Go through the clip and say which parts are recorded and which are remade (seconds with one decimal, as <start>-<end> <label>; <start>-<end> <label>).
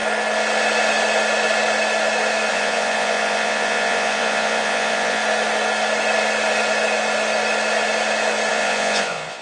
0.0-2.5 recorded; 2.5-5.2 remade; 5.2-8.5 recorded; 8.5-9.4 remade